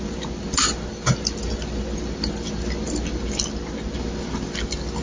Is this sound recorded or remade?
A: recorded